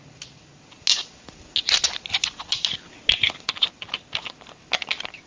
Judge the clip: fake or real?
real